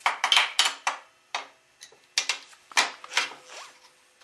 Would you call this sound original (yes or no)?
yes